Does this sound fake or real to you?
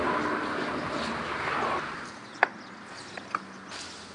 real